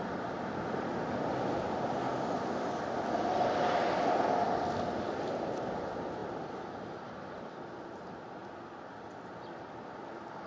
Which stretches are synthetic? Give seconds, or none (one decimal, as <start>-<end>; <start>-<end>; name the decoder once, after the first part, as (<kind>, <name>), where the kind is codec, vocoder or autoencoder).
0.0-10.5 (vocoder, BigVGAN v2)